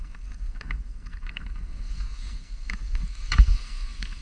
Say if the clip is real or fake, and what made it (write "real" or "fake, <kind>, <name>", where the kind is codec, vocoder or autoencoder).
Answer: fake, codec, SNAC